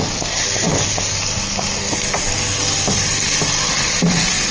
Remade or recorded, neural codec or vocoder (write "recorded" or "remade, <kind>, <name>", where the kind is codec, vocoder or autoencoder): recorded